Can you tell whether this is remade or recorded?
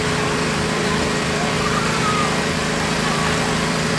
remade